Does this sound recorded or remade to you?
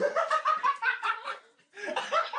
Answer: recorded